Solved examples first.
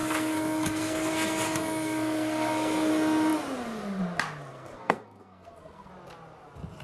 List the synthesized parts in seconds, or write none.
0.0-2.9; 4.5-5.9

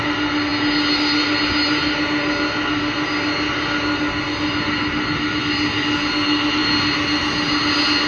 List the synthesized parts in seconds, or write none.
none

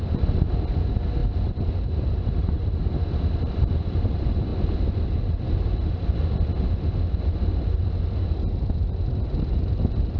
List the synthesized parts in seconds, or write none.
1.2-4.0